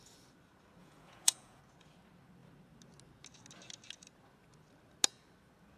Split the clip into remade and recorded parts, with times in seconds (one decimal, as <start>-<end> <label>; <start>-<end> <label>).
0.0-0.8 recorded; 0.8-1.6 remade; 1.6-5.8 recorded